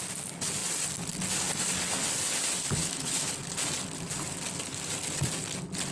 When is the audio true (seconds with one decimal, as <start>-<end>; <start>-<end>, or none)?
0.0-2.8; 3.3-5.9